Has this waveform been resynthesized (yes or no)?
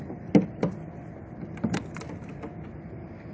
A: no